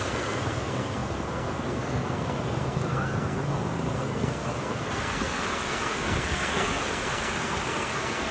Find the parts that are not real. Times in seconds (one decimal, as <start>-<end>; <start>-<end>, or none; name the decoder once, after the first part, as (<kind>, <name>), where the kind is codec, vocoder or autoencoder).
0.0-8.3 (codec, SNAC)